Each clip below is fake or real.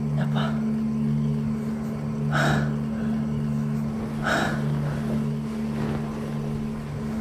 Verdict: real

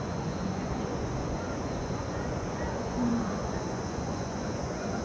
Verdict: fake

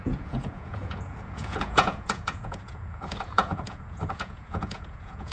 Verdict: fake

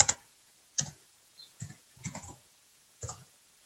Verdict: fake